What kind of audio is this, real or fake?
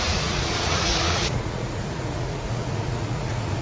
fake